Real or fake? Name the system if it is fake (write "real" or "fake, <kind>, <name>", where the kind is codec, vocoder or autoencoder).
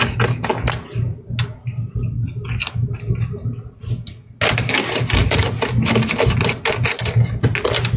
real